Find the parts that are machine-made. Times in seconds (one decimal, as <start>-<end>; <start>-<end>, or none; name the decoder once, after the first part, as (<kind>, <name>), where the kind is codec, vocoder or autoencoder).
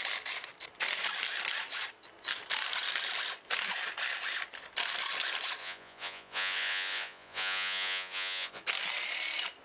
5.6-8.6 (vocoder, Vocos)